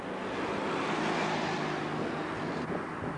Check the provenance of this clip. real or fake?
real